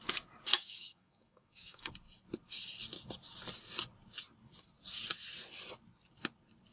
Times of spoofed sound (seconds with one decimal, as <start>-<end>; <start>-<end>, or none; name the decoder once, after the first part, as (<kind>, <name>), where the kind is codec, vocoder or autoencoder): 0.5-1.9 (autoencoder, DAC-VAE)